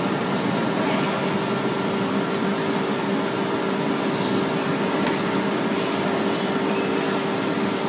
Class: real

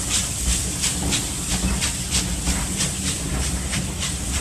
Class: real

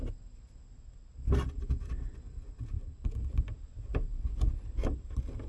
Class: real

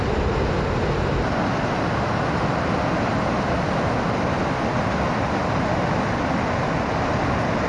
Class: real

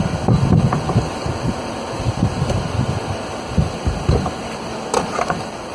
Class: real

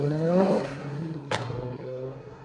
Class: fake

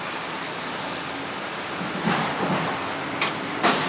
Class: real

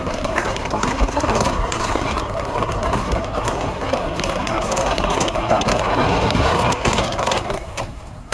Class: fake